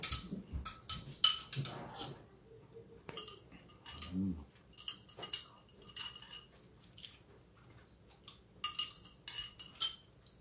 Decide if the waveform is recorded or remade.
recorded